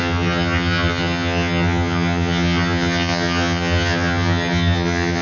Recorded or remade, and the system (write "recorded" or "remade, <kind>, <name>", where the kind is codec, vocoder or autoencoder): remade, vocoder, HiFi-GAN